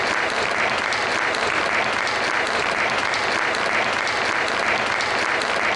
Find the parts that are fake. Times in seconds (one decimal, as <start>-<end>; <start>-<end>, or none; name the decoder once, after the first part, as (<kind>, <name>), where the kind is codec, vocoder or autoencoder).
0.0-1.1 (vocoder, BigVGAN v2); 2.1-3.0